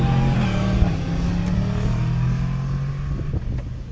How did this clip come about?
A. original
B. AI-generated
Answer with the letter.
A